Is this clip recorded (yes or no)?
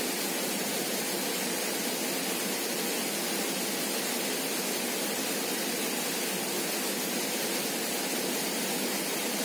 yes